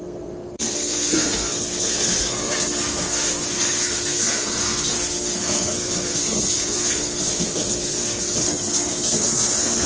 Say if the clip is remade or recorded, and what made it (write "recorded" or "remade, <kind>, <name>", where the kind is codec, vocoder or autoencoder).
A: remade, codec, SNAC